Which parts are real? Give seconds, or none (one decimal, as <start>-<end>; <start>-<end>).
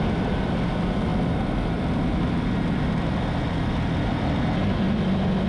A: 0.0-5.5